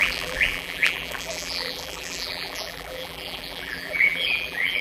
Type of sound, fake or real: fake